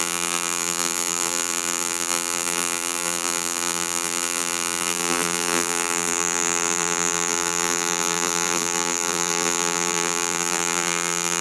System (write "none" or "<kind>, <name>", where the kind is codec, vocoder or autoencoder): vocoder, BigVGAN v2